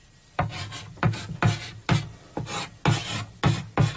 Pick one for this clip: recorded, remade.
recorded